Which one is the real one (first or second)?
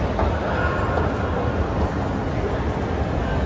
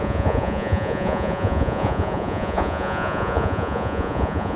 first